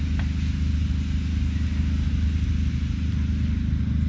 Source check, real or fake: real